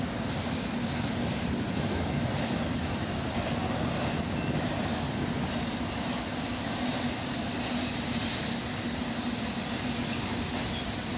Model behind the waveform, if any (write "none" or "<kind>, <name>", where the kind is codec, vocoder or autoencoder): none